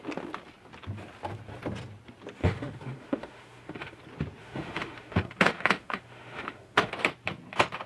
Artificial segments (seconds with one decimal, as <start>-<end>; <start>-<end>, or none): 2.4-4.0; 4.4-6.9